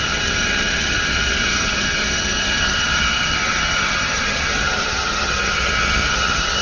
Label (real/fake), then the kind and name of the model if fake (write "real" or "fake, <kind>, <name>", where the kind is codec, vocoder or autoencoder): fake, vocoder, HiFi-GAN